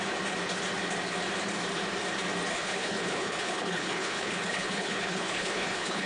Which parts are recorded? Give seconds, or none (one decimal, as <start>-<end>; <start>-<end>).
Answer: 0.0-2.5